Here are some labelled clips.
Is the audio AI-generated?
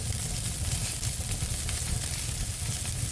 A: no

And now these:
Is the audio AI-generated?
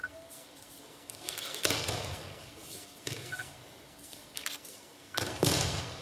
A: yes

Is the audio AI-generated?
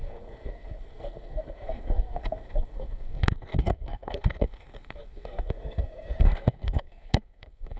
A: yes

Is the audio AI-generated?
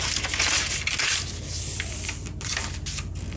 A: no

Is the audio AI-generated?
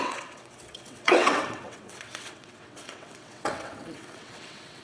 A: yes